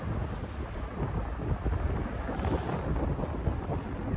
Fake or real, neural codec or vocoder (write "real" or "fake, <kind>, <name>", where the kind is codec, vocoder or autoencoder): real